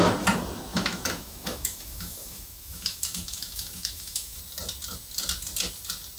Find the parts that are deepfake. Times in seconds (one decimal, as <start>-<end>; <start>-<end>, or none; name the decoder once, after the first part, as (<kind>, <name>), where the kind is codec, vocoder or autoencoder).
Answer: 0.7-4.4 (autoencoder, DAC-VAE)